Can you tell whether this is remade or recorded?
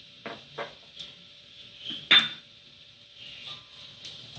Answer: recorded